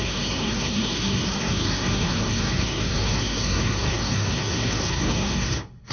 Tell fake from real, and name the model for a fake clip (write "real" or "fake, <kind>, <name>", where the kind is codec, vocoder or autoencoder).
fake, codec, SNAC